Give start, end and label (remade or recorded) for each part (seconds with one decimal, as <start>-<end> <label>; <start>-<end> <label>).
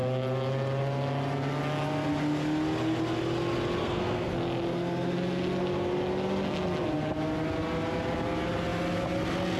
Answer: 0.0-3.8 recorded; 3.8-4.3 remade; 4.3-9.6 recorded